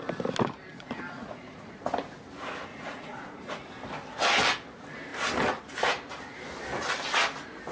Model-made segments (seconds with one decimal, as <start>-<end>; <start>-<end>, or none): 0.7-1.9; 2.7-3.6